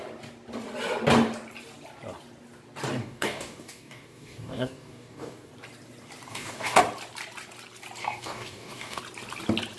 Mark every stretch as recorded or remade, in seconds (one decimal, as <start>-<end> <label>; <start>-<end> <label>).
0.0-3.0 recorded; 3.0-5.5 remade; 5.5-6.3 recorded; 6.3-6.8 remade; 6.8-8.0 recorded; 8.0-9.0 remade; 9.0-9.8 recorded